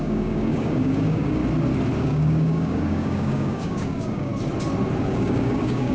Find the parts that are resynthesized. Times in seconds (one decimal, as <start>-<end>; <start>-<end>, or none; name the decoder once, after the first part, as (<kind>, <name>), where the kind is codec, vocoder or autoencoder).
0.0-1.4 (codec, DAC); 2.0-4.3; 5.0-5.9